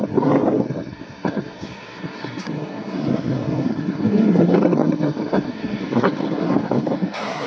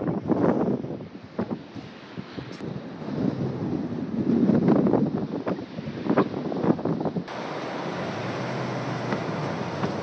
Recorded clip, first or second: second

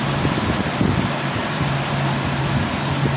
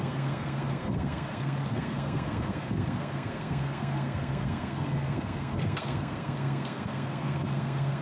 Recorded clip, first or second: first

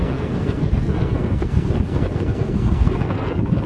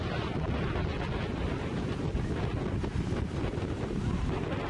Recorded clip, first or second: second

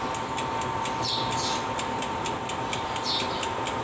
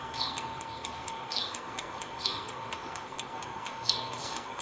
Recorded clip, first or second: first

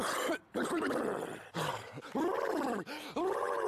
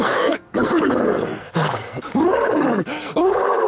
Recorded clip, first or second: first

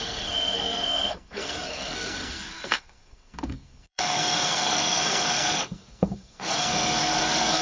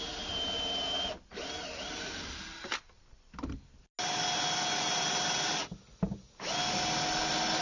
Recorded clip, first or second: second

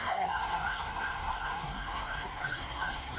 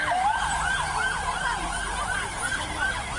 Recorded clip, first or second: second